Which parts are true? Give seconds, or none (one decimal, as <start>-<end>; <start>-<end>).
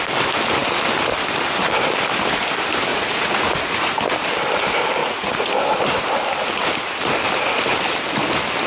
0.0-2.9; 4.0-5.0; 5.8-8.7